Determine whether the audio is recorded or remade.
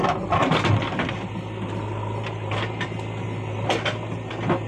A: recorded